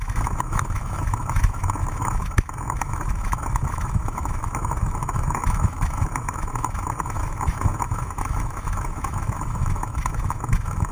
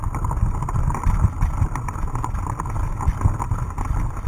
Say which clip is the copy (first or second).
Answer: first